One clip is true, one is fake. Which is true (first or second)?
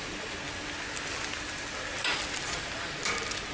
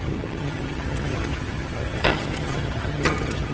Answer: first